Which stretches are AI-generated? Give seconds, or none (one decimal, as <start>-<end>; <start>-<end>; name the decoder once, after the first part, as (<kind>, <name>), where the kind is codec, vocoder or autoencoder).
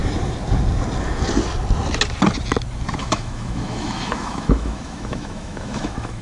3.0-6.2 (autoencoder, DAC-VAE)